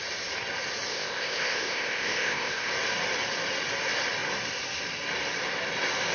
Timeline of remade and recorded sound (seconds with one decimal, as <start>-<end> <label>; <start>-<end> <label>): 0.0-0.9 recorded; 0.9-2.7 remade; 2.7-6.1 recorded